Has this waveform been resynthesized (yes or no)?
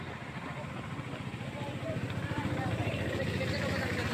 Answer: no